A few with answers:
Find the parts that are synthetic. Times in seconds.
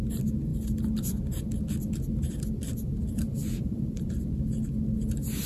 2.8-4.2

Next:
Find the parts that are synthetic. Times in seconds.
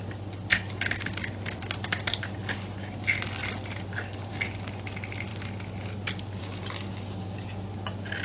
none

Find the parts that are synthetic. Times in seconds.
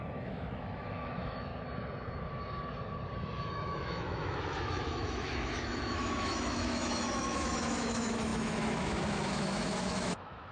0.0-1.5; 3.5-10.5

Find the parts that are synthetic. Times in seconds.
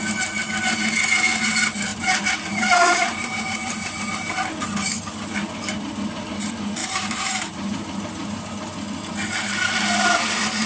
1.9-4.1; 6.8-8.5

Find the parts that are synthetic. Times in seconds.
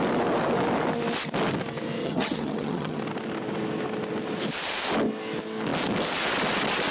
2.0-3.0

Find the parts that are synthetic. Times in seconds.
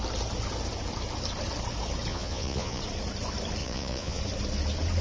2.1-2.8; 3.6-4.2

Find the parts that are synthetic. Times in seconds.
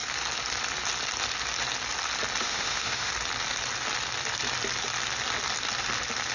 2.4-3.1